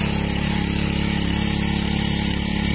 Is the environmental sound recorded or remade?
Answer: recorded